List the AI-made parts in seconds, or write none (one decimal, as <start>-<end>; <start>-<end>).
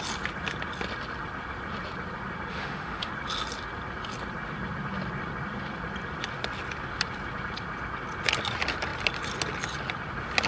2.5-3.1